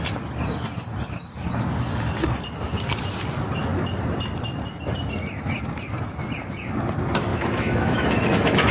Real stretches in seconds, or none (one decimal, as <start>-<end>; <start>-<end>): 0.0-7.3